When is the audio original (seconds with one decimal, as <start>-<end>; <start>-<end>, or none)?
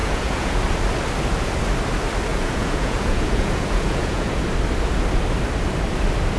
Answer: 0.6-2.3; 4.4-6.4